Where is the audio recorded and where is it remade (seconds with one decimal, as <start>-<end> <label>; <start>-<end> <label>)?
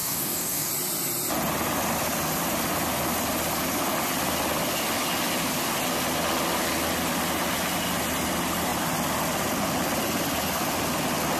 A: 0.0-0.7 remade; 0.7-11.4 recorded